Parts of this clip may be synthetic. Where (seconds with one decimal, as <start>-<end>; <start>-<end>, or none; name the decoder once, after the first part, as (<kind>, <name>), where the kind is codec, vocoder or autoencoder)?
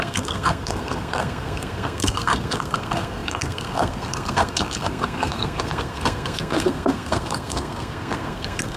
0.0-8.8 (codec, SNAC)